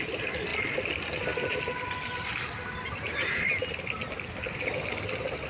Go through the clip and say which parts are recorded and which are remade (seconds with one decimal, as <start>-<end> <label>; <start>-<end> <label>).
0.0-5.5 recorded

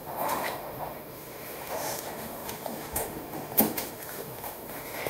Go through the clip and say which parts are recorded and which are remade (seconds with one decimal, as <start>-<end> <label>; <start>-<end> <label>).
0.0-5.1 remade

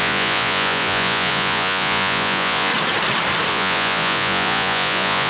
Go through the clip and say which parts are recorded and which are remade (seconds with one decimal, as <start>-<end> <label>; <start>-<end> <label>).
0.0-2.7 remade; 2.7-3.5 recorded; 3.5-5.3 remade

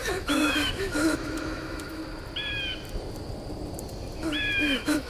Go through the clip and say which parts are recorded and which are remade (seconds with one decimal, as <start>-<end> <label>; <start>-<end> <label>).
0.0-2.0 remade; 2.0-4.2 recorded; 4.2-5.1 remade

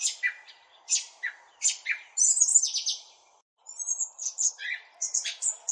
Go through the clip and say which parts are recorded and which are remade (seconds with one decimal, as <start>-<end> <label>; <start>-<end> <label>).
0.0-5.7 recorded

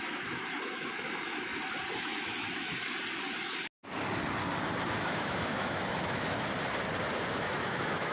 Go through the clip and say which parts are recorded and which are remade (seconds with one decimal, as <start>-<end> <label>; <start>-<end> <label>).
0.0-1.5 remade; 1.5-2.0 recorded; 2.0-2.7 remade; 2.7-5.0 recorded; 5.0-6.5 remade; 6.5-7.3 recorded; 7.3-8.1 remade